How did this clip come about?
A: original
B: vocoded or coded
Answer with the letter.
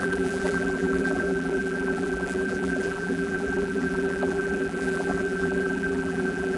B